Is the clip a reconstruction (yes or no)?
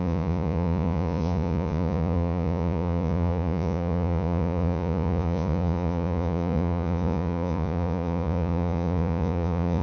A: yes